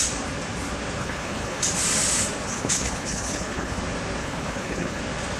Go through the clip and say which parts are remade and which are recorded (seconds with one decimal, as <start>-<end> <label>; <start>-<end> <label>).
0.0-1.0 recorded; 1.0-1.6 remade; 1.6-2.5 recorded; 2.5-3.8 remade; 3.8-4.2 recorded; 4.2-5.0 remade; 5.0-5.4 recorded